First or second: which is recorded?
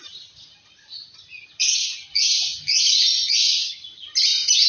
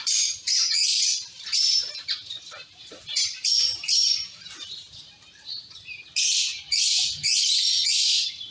first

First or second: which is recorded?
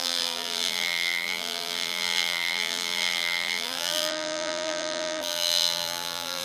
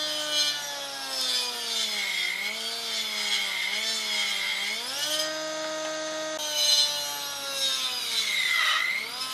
second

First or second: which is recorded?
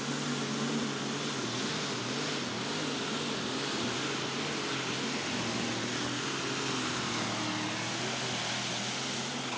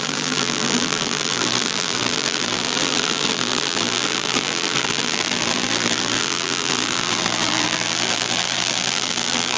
first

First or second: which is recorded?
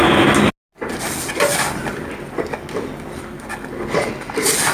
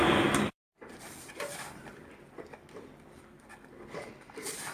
first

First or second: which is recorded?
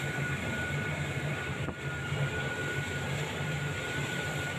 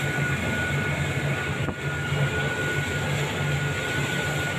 second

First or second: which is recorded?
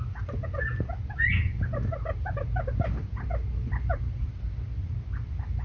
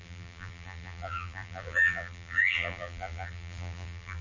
first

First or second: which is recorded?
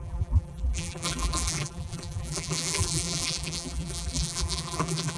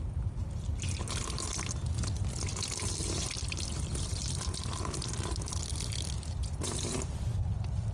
second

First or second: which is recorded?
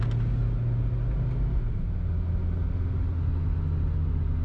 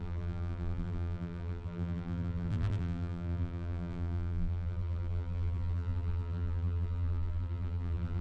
first